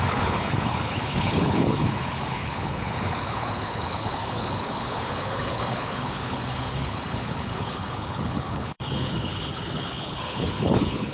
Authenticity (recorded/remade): remade